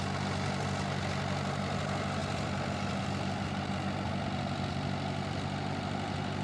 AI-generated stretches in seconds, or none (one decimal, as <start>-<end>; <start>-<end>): none